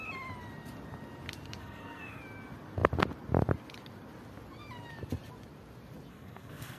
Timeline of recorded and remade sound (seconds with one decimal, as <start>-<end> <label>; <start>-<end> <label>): 0.0-1.6 recorded; 1.6-2.2 remade; 2.2-6.1 recorded; 6.1-6.8 remade